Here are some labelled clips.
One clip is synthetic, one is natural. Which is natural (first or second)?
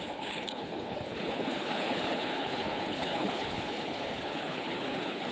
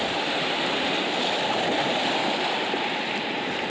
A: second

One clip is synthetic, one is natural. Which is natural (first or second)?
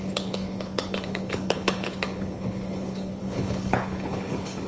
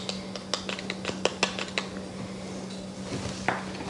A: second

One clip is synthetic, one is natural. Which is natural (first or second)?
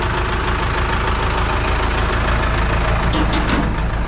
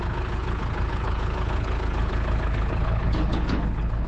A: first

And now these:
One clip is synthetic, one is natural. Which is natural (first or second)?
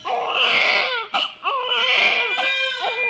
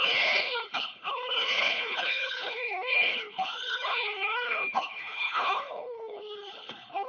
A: first